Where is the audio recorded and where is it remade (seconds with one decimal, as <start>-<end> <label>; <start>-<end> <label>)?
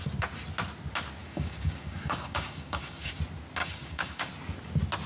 0.0-1.2 recorded; 1.2-3.1 remade; 3.1-3.6 recorded; 3.6-4.3 remade; 4.3-5.1 recorded